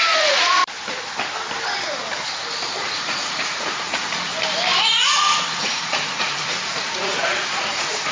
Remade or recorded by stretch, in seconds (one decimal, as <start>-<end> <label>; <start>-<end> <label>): 0.0-0.6 remade; 0.6-2.8 recorded; 2.8-4.3 remade; 4.3-5.5 recorded; 5.5-8.1 remade